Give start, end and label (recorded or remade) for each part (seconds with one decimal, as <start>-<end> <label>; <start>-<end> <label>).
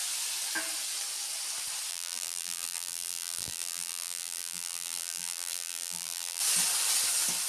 0.0-1.9 recorded; 1.9-6.4 remade; 6.4-7.5 recorded